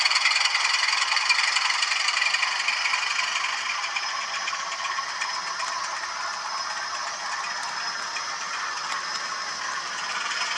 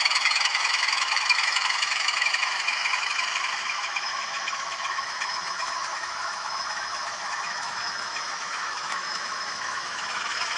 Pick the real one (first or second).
first